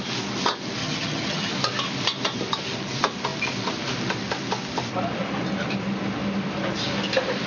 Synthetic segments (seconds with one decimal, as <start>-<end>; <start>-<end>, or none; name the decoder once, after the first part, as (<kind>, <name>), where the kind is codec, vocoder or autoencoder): 0.8-1.5 (vocoder, HiFi-GAN)